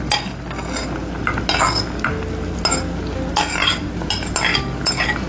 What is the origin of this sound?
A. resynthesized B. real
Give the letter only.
B